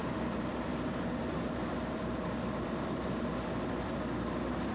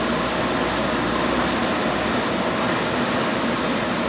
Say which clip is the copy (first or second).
first